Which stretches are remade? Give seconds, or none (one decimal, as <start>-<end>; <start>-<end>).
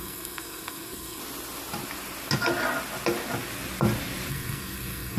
0.0-1.2; 4.3-5.2